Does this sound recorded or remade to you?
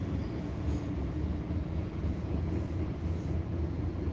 remade